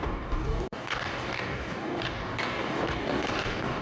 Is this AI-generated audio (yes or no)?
yes